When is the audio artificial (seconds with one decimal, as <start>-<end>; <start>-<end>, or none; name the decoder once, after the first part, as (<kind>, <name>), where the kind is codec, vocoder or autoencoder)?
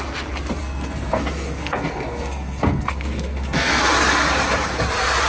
0.6-3.8 (codec, SNAC)